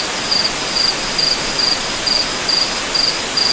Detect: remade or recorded recorded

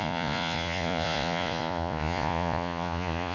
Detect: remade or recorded remade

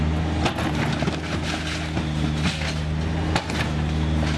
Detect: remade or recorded recorded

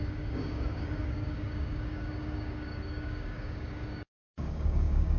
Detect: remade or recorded remade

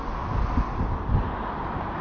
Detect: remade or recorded recorded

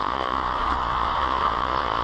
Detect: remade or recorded remade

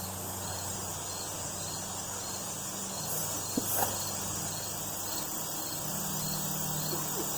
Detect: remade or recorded recorded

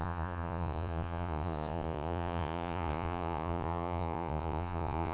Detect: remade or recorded remade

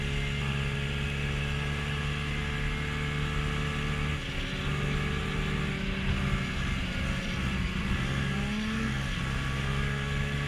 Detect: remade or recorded recorded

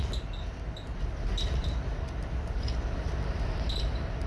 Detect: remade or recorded recorded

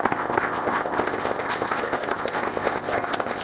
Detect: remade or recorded remade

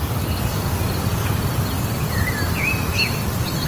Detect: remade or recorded recorded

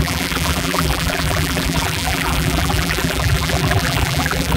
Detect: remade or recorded remade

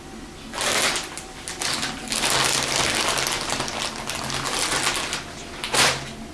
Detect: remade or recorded recorded